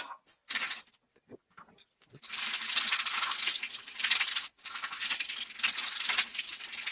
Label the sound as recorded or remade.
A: recorded